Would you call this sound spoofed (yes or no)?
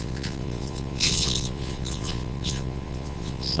yes